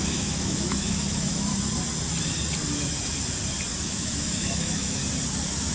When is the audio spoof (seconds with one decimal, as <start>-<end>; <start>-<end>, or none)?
0.0-1.5; 3.8-5.0